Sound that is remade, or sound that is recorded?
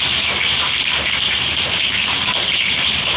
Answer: remade